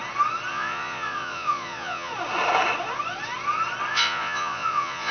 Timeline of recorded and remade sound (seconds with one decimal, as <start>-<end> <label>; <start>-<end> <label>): 0.0-0.5 recorded; 0.5-2.1 remade; 2.1-3.9 recorded; 3.9-5.1 remade